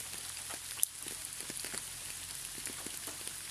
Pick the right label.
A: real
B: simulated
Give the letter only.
A